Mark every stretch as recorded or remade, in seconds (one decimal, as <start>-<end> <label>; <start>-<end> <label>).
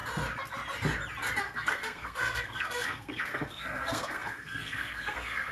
0.0-1.4 recorded; 1.4-5.5 remade